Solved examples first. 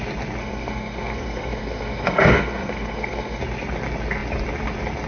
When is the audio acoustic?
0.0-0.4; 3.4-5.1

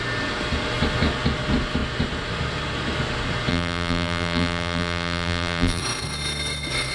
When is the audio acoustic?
0.0-3.5; 5.8-6.9

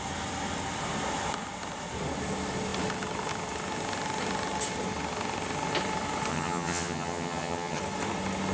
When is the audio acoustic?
0.0-6.3; 7.8-8.5

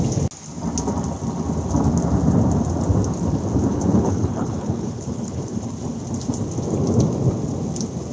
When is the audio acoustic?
0.0-3.7; 5.5-8.1